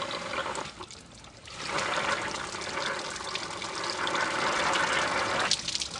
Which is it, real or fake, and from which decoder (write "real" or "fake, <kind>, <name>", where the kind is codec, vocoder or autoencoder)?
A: real